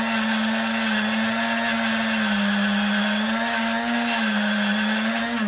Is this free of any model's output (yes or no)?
yes